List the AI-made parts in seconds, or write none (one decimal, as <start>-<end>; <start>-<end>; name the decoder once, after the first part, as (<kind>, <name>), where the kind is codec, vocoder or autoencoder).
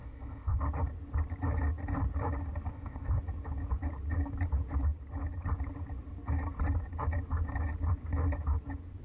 0.0-0.6 (codec, ZipCodec); 2.7-3.2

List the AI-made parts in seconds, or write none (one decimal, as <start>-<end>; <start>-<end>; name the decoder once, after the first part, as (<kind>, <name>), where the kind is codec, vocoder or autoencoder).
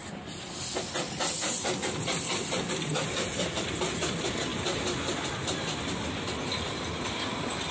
2.0-4.5 (vocoder, BigVGAN v2); 6.5-7.7